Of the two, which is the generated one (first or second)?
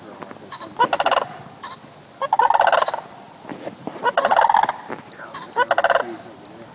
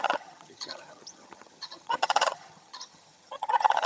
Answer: second